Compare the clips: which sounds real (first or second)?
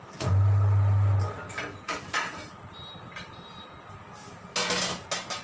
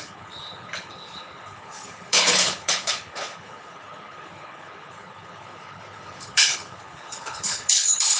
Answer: first